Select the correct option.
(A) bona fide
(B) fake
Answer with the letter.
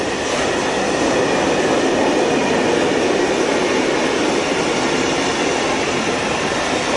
A